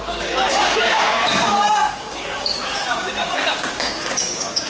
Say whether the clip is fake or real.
fake